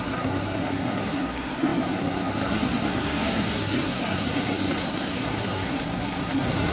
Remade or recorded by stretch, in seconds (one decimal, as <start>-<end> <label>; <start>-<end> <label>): 0.0-6.7 remade